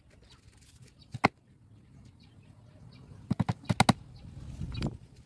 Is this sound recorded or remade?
recorded